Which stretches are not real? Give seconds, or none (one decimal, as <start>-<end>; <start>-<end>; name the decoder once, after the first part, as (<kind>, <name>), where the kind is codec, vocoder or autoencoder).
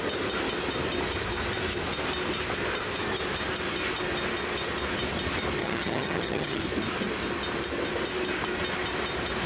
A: 5.6-6.6 (vocoder, HiFi-GAN)